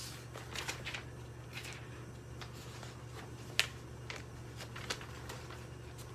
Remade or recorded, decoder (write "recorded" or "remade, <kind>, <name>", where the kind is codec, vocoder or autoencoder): recorded